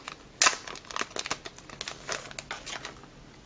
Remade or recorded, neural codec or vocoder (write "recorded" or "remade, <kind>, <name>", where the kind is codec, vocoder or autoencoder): recorded